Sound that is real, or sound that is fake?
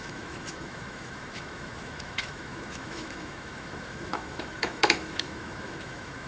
fake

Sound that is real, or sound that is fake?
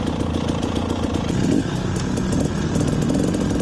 real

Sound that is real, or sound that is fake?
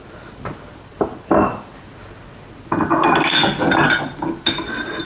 real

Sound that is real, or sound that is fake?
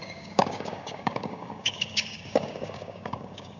fake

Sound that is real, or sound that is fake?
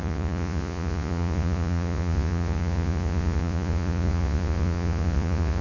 fake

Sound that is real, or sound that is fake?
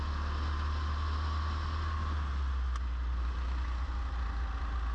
real